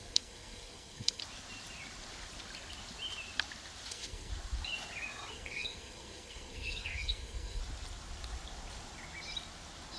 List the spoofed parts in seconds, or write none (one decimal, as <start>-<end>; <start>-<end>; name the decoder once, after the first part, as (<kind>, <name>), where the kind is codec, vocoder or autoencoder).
0.0-1.2 (codec, SNAC); 3.9-4.3; 5.3-7.6